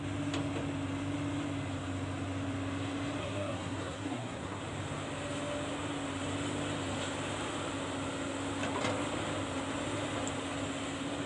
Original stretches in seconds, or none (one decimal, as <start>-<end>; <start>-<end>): 0.0-3.2; 4.6-11.3